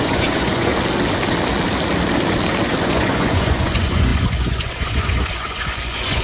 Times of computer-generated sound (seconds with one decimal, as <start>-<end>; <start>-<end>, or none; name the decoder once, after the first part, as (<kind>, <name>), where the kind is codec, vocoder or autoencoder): 0.0-0.7 (vocoder, Vocos); 2.8-6.2